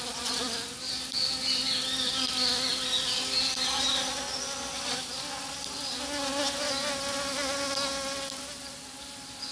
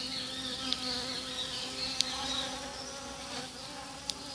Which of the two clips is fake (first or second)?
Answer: second